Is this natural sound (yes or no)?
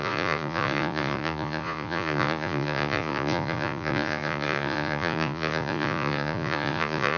no